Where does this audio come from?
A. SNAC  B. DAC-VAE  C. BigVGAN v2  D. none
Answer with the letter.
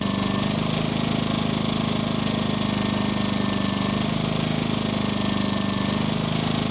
D